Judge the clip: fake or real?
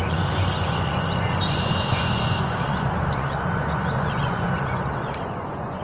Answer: fake